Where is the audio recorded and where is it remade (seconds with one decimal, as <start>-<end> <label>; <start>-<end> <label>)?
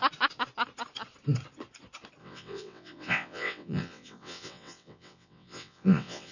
0.0-2.2 recorded; 2.2-6.3 remade